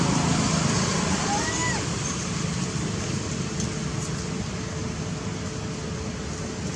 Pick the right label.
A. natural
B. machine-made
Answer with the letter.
A